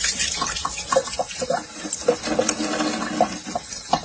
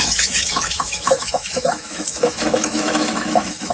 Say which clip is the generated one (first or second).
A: second